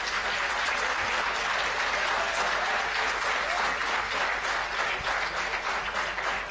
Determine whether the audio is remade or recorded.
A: remade